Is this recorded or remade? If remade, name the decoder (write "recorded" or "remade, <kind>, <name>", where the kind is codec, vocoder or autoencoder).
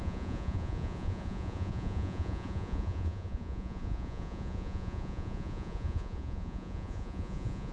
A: remade, vocoder, Vocos